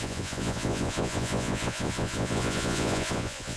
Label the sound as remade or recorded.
remade